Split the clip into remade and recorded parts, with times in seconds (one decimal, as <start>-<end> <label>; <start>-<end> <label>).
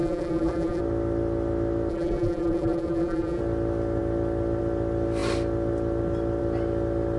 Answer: 0.0-0.8 remade; 0.8-1.9 recorded; 1.9-3.4 remade; 3.4-7.2 recorded